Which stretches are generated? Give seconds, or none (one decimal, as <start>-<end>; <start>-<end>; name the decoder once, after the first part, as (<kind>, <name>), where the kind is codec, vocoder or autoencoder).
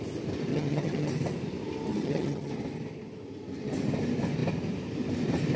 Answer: 0.5-1.1 (vocoder, HiFi-GAN); 1.9-2.5